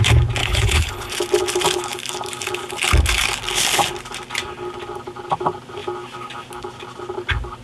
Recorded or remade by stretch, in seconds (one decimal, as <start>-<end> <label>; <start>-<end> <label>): 0.0-0.4 recorded; 0.4-1.1 remade; 1.1-7.6 recorded